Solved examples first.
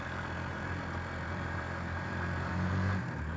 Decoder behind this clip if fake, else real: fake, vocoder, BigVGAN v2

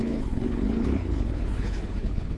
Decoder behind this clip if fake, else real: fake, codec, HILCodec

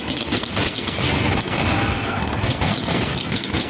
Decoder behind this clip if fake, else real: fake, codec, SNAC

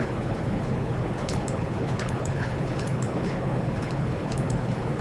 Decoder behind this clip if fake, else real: fake, codec, HILCodec